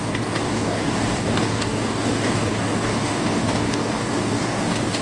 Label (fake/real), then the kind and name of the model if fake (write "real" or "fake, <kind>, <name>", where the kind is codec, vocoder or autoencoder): fake, codec, DAC